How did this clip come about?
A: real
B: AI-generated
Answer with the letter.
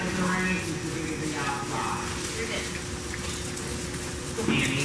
A